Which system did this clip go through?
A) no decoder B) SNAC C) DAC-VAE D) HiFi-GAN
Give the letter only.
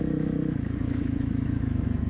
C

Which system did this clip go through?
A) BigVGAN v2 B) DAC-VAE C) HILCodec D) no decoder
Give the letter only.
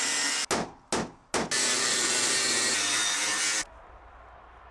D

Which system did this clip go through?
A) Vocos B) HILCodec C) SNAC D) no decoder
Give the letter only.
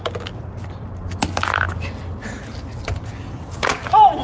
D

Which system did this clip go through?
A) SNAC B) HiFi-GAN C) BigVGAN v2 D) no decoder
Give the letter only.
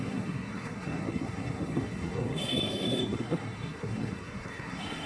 A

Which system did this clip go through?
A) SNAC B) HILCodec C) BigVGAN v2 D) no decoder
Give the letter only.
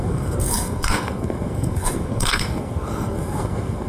A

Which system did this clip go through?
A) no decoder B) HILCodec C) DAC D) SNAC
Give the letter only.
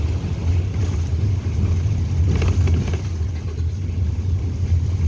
A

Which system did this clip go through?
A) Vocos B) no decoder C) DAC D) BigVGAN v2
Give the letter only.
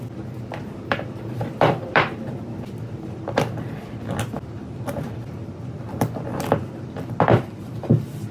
D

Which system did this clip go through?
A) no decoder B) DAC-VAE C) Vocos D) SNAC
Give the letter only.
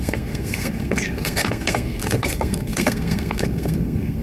D